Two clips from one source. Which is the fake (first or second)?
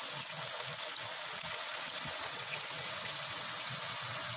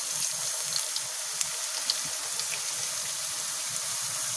first